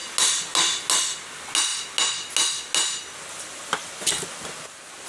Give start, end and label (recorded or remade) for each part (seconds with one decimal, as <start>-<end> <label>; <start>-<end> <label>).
0.0-5.1 recorded